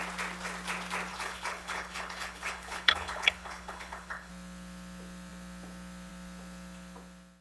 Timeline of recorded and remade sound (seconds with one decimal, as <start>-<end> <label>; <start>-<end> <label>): 0.0-1.1 recorded; 1.1-4.3 remade; 4.3-7.4 recorded